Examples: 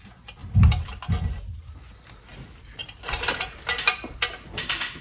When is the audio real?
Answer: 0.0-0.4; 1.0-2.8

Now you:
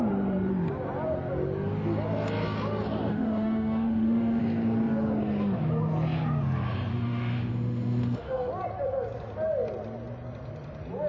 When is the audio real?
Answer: 0.0-3.1; 4.4-6.9; 8.5-11.1